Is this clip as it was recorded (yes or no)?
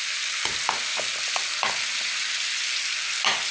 yes